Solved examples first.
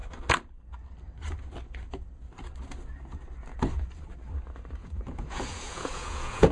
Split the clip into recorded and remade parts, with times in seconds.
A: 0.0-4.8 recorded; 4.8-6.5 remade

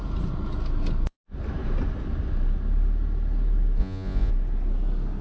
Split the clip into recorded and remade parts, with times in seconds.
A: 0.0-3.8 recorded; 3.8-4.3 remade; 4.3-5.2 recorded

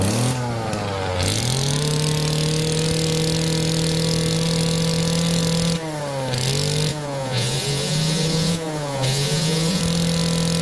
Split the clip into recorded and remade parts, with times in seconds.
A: 0.0-6.9 recorded; 6.9-9.8 remade; 9.8-10.6 recorded

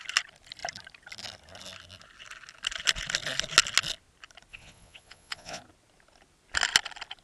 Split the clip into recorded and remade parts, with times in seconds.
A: 0.0-4.5 recorded; 4.5-5.6 remade; 5.6-7.2 recorded

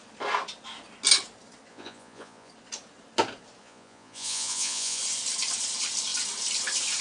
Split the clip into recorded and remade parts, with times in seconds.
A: 0.0-1.7 recorded; 1.7-2.5 remade; 2.5-3.6 recorded; 3.6-5.0 remade; 5.0-7.0 recorded